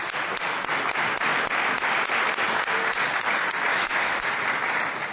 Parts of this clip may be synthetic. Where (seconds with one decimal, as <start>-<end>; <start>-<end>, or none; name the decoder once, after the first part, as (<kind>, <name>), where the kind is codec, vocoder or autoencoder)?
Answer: 3.7-4.2 (autoencoder, DAC-VAE)